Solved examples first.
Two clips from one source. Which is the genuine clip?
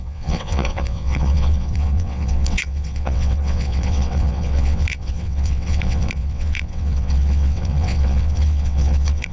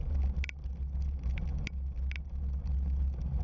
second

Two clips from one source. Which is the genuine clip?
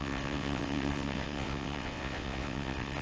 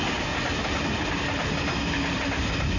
second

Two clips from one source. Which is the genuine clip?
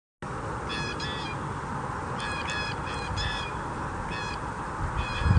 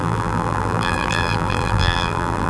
first